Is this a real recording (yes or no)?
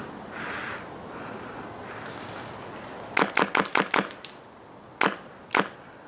yes